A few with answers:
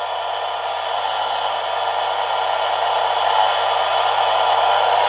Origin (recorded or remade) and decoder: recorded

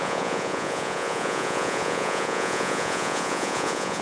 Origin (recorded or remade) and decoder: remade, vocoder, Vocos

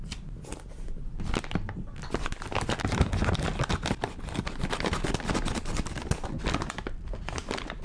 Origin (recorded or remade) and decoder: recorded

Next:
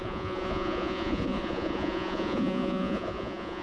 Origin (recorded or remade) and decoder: remade, vocoder, Vocos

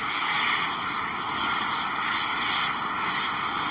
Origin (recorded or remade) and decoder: recorded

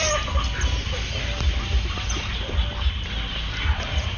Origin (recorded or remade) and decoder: recorded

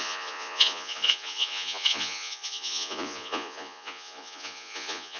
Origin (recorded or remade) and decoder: remade, vocoder, Vocos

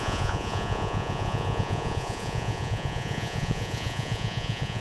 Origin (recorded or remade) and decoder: remade, vocoder, Vocos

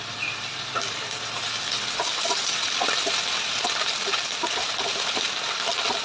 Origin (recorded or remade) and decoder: recorded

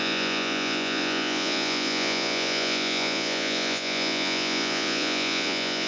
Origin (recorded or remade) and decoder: remade, vocoder, Vocos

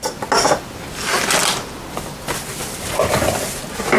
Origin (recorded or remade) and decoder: recorded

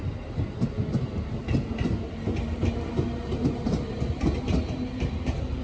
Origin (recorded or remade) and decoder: recorded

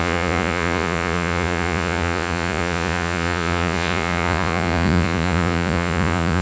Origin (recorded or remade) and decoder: remade, vocoder, Vocos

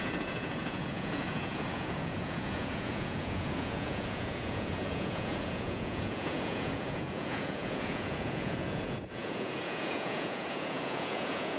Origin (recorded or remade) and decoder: remade, vocoder, Vocos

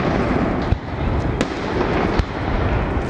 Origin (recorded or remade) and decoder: recorded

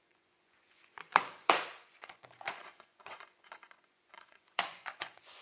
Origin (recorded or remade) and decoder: remade, vocoder, Vocos